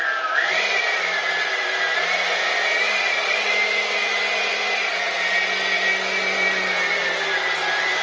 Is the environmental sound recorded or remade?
remade